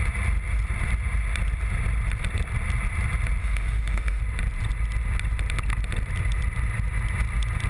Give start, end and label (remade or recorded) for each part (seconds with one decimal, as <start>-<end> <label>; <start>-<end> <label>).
0.0-3.4 recorded; 3.4-4.2 remade; 4.2-7.7 recorded